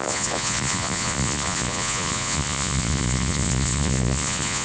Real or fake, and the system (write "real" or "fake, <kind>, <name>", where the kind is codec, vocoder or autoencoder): fake, vocoder, Vocos